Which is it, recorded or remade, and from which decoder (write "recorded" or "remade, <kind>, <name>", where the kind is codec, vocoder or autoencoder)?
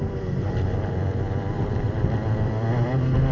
recorded